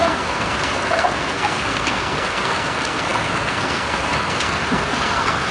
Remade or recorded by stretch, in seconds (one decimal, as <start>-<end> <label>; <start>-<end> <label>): 0.0-5.5 remade